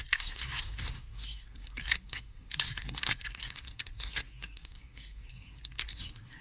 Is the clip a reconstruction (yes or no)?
yes